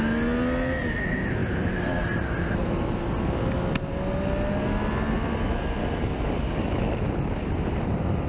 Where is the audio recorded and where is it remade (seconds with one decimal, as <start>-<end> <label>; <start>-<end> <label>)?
0.0-5.8 recorded; 5.8-6.8 remade; 6.8-8.3 recorded